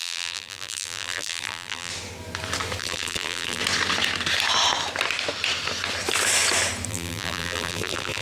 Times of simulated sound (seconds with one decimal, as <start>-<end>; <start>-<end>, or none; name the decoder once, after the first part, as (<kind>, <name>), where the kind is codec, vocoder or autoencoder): 0.0-1.9 (vocoder, BigVGAN v2); 2.8-3.6; 6.9-8.2